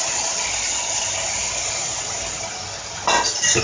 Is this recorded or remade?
recorded